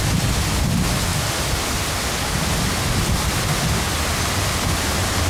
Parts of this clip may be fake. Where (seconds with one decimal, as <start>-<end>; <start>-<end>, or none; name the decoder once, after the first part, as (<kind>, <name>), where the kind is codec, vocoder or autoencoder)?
none